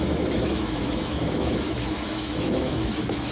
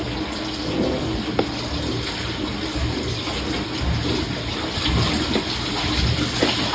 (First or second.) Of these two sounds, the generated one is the first